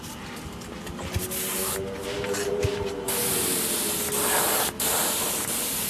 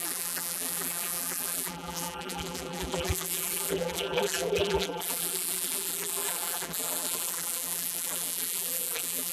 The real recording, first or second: first